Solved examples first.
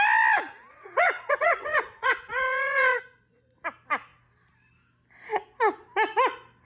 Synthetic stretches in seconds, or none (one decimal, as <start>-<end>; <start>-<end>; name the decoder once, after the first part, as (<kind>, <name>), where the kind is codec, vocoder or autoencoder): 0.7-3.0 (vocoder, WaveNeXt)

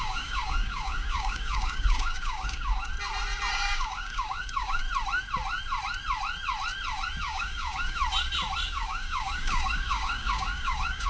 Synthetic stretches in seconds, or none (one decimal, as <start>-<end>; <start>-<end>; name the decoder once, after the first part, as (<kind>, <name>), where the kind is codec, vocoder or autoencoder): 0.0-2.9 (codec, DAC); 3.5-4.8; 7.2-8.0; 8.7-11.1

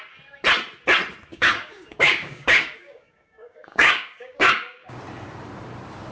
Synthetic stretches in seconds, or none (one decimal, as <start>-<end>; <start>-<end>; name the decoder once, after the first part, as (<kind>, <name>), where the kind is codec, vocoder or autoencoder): 1.3-5.0 (codec, DAC)

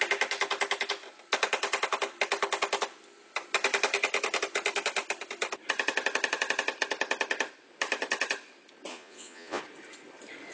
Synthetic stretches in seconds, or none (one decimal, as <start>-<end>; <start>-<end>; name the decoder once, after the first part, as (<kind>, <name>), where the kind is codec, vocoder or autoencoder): 8.9-9.6 (vocoder, Vocos)